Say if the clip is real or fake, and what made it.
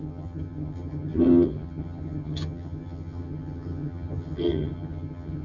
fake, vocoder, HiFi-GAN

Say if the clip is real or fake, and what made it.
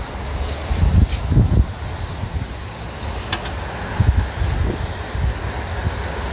real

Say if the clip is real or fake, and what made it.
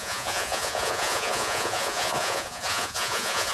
fake, vocoder, Vocos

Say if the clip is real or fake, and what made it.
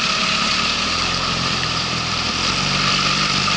fake, vocoder, BigVGAN v2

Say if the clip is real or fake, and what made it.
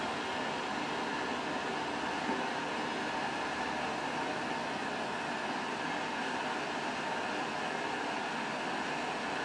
real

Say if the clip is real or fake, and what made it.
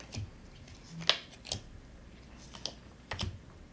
real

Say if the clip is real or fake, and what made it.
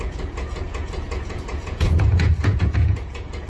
fake, vocoder, Vocos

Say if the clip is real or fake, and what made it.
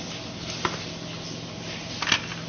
real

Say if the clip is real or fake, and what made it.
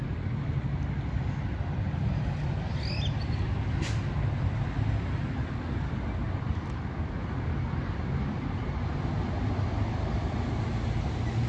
real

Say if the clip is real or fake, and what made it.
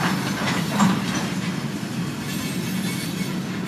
real